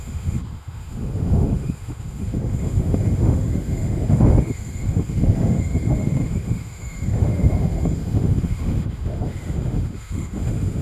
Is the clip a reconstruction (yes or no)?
yes